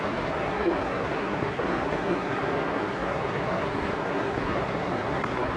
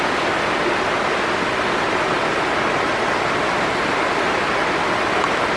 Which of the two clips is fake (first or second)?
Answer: first